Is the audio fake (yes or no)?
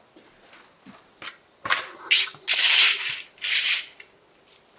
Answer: no